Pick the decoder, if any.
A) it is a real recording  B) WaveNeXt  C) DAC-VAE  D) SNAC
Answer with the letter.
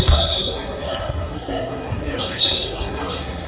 D